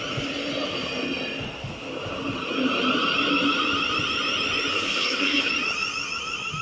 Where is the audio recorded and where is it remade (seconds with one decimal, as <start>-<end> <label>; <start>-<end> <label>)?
0.0-4.7 recorded; 4.7-5.5 remade; 5.5-6.6 recorded